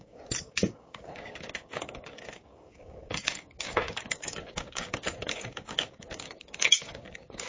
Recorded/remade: remade